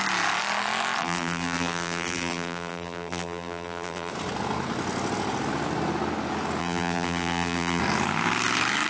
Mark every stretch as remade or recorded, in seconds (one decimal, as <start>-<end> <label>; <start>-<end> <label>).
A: 0.0-1.0 recorded; 1.0-4.1 remade; 4.1-6.6 recorded; 6.6-7.8 remade; 7.8-8.9 recorded